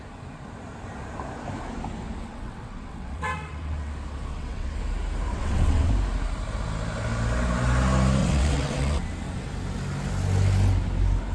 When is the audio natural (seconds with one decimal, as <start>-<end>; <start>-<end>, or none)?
0.0-2.2; 3.9-4.3; 4.8-5.3; 5.9-8.2; 9.1-11.3